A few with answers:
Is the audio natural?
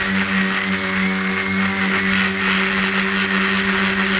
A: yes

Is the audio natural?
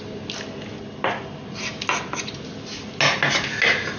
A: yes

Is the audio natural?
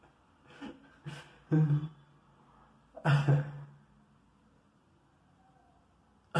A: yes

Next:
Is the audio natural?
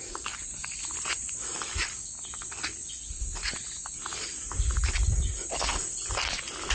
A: yes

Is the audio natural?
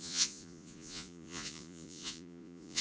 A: no